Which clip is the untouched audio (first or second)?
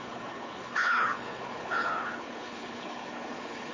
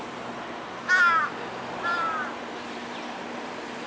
second